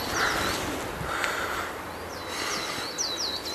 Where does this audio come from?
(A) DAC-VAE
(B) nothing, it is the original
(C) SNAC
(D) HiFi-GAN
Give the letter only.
B